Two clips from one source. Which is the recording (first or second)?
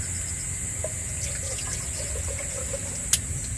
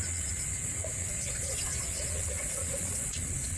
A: first